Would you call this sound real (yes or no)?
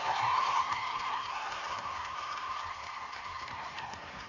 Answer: no